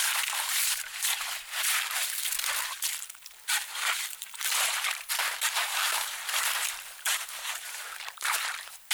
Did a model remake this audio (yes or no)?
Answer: yes